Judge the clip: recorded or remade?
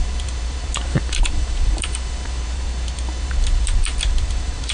remade